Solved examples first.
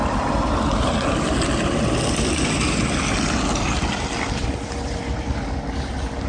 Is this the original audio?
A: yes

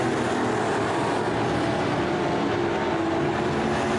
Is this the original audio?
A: yes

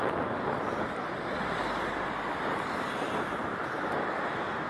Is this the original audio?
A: yes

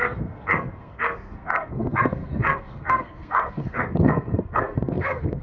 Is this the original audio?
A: no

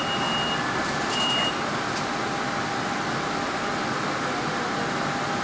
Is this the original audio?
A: yes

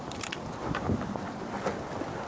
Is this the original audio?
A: yes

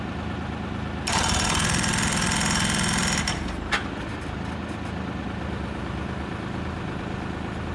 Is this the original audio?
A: yes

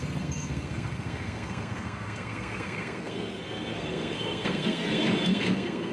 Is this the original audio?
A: no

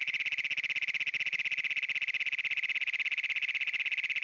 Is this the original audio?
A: yes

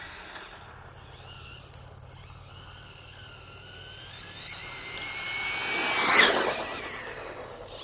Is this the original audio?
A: yes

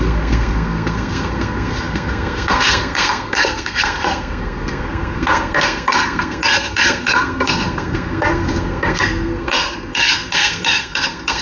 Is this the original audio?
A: no